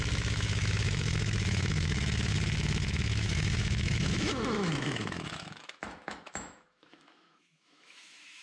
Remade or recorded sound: remade